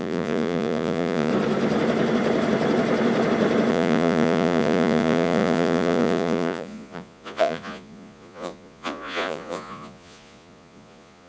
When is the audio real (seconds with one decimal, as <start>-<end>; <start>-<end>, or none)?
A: 1.3-3.7